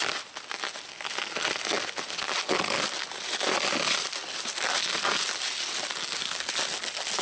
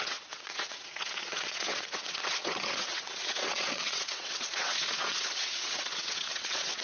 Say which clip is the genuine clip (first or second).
first